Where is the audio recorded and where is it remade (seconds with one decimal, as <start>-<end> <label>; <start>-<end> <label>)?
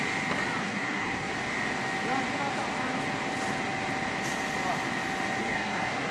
0.0-0.6 recorded; 0.6-1.3 remade; 1.3-5.4 recorded; 5.4-6.1 remade